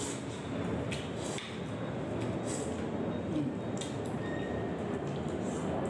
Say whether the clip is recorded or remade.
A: recorded